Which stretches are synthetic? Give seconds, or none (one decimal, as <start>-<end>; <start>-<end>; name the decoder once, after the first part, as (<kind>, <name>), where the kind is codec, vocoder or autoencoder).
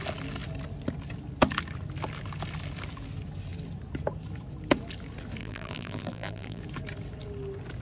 5.4-6.6 (vocoder, BigVGAN v2)